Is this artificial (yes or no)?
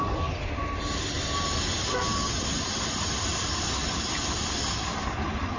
no